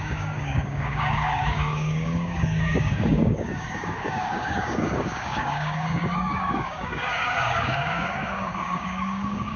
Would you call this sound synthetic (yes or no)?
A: yes